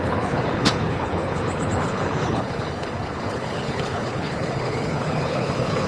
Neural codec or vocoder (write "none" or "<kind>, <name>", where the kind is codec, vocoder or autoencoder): codec, HILCodec